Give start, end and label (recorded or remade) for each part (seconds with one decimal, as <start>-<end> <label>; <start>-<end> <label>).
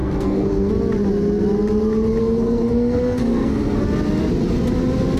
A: 0.0-0.7 remade; 0.7-2.2 recorded; 2.2-3.8 remade; 3.8-5.2 recorded